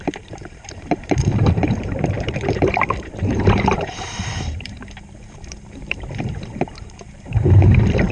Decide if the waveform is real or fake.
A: fake